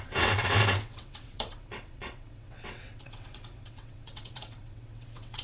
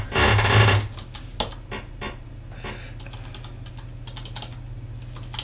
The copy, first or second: first